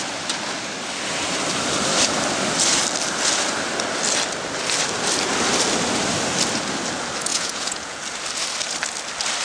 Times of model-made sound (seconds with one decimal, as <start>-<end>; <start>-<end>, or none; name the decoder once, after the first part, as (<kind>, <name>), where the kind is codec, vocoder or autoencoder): 7.3-8.0 (vocoder, Vocos)